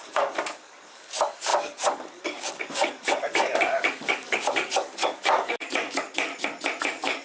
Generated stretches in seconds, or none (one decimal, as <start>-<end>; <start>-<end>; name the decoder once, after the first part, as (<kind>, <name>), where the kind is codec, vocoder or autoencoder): 0.0-6.3 (codec, DAC); 6.8-7.2

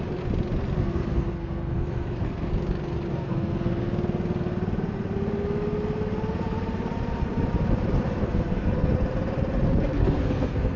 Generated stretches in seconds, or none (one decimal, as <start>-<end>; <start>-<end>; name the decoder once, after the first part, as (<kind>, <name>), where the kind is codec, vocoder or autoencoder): 0.8-2.5 (codec, SNAC); 3.1-3.9; 8.2-8.7; 10.0-10.8

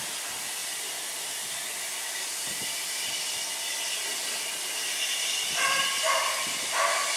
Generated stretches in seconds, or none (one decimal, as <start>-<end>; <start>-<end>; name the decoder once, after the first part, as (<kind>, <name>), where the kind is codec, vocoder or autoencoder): none

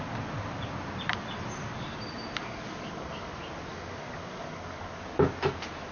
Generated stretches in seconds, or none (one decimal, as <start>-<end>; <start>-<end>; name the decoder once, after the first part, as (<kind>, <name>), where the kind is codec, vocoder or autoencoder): 2.4-3.3 (codec, DAC); 3.7-5.0

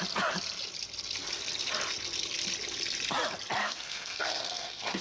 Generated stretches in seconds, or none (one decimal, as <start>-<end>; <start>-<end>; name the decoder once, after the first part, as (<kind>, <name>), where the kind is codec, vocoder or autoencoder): 3.6-5.0 (codec, SNAC)

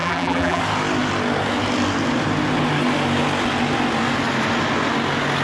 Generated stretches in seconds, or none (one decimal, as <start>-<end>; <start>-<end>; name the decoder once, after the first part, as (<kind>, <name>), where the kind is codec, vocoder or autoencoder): 0.0-0.6 (vocoder, BigVGAN v2)

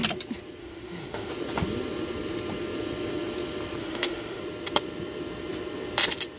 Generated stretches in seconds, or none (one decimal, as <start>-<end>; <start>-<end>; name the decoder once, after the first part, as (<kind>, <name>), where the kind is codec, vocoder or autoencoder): 0.6-1.3 (autoencoder, DAC-VAE); 3.8-4.4